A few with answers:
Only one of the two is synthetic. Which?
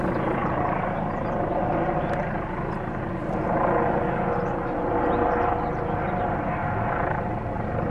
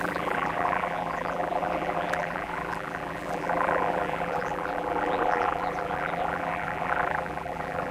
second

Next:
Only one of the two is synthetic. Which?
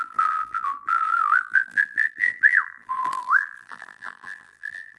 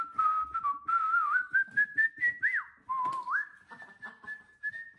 first